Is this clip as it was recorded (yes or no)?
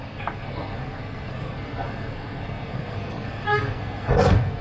no